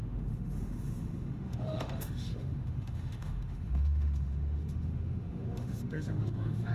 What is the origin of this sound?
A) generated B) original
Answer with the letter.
A